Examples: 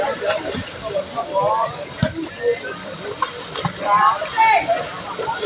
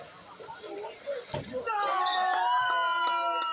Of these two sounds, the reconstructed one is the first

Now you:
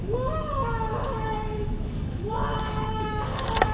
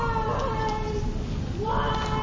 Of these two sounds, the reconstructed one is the first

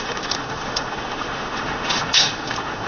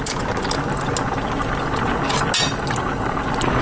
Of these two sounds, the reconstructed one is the first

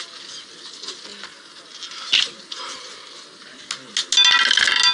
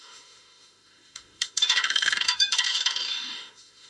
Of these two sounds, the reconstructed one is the second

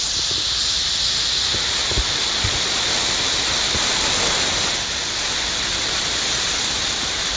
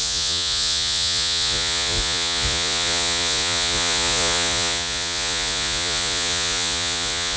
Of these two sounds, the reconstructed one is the second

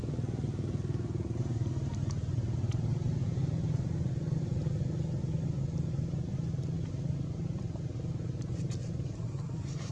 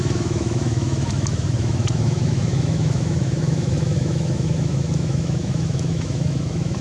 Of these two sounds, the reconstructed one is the second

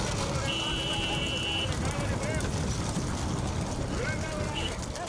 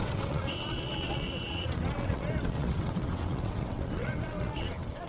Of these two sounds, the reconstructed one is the second